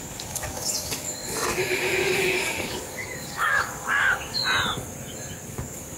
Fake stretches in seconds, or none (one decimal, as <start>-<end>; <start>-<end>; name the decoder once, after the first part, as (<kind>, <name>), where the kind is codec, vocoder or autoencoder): 0.0-4.4 (codec, DAC); 5.5-6.0